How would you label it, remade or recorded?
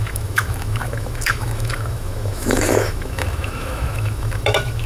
remade